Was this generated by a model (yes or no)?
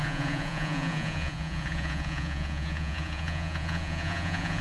yes